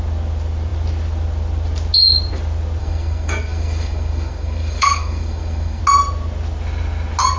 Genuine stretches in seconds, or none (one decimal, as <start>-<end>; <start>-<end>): 0.0-2.8; 5.8-7.4